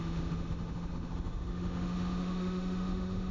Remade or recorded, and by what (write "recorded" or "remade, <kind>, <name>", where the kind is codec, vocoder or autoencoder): remade, autoencoder, DAC-VAE